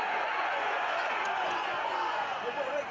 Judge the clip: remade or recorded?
remade